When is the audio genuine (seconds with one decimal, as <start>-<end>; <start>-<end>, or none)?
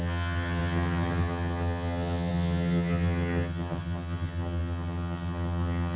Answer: none